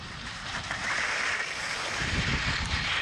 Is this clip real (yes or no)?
yes